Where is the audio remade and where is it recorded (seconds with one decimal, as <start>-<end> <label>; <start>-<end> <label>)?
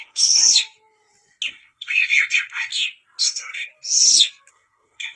0.0-0.4 remade; 0.4-1.5 recorded; 1.5-2.7 remade; 2.7-3.2 recorded; 3.2-3.7 remade; 3.7-4.5 recorded; 4.5-5.2 remade